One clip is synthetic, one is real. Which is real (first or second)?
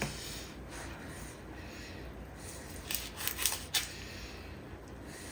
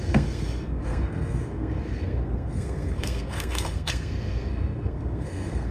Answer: first